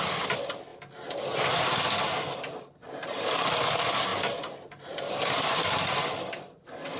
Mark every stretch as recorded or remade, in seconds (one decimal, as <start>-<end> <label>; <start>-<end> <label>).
0.0-7.0 recorded